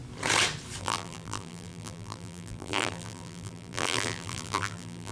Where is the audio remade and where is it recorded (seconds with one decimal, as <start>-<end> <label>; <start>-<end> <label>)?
0.0-0.8 recorded; 0.8-5.1 remade